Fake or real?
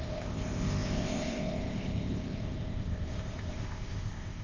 fake